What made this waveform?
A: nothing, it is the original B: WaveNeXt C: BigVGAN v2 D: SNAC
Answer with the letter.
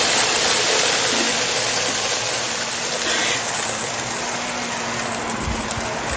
A